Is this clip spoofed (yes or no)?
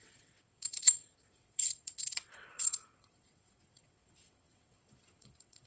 yes